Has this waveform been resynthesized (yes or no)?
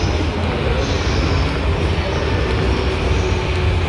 no